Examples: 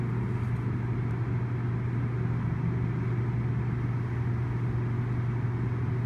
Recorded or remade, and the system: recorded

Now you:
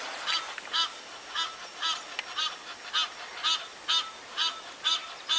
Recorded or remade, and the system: recorded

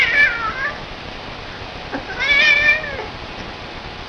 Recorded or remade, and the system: recorded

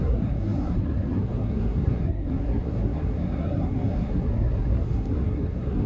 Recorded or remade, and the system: remade, codec, SNAC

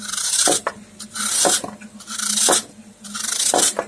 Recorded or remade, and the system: recorded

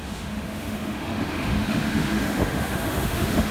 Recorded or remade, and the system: remade, autoencoder, DAC-VAE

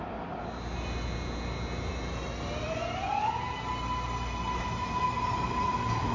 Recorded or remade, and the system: recorded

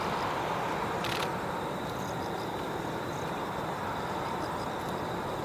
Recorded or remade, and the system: remade, vocoder, BigVGAN v2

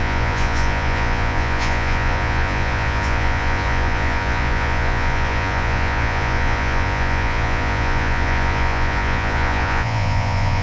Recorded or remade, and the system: remade, vocoder, Vocos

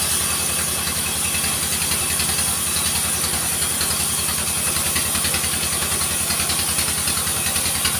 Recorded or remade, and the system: recorded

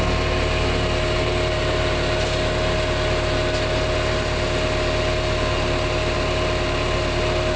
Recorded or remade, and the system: recorded